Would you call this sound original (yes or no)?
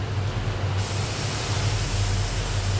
yes